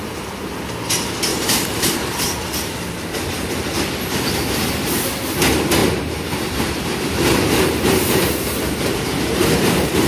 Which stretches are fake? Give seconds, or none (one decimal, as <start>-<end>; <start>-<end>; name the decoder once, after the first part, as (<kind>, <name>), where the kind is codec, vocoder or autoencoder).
1.3-3.1 (vocoder, BigVGAN v2); 5.8-10.1